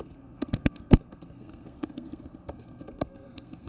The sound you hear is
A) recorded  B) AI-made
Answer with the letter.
B